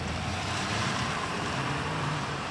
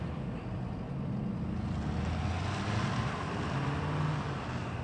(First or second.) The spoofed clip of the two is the first